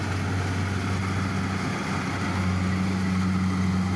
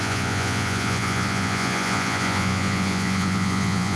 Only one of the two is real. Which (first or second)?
first